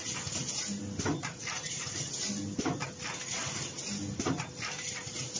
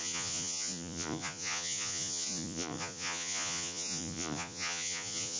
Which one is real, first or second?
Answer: first